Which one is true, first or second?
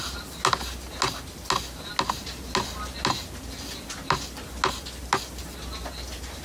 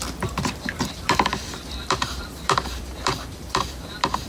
first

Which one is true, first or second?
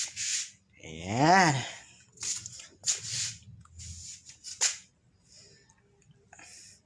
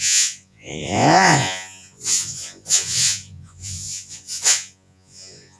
first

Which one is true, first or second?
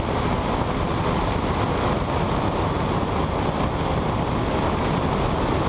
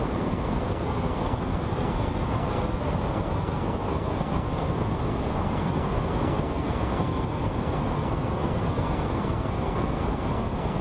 first